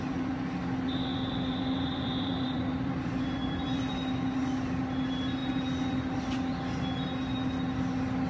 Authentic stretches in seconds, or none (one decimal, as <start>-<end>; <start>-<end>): 0.0-1.1; 3.8-8.3